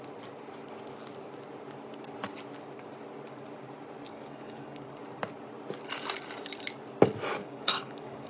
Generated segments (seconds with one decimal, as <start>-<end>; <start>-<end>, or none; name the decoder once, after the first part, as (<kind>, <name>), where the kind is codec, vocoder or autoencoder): 4.1-5.0 (codec, DAC); 7.4-8.3